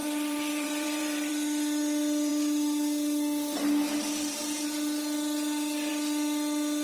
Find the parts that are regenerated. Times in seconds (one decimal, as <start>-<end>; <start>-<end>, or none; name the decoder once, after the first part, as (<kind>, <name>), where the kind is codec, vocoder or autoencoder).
0.0-1.3 (vocoder, BigVGAN v2)